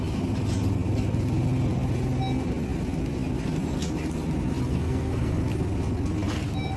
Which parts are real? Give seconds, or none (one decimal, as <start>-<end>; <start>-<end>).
0.0-4.7; 5.4-6.8